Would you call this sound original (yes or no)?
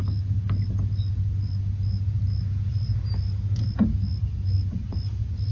yes